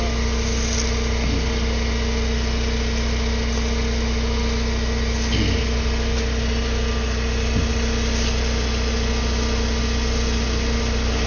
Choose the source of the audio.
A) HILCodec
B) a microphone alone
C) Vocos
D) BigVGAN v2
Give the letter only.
B